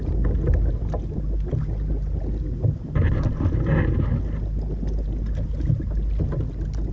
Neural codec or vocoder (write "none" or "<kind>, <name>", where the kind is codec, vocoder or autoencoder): none